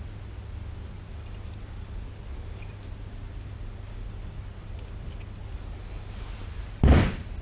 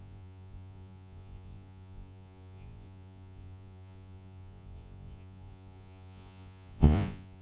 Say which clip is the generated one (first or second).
second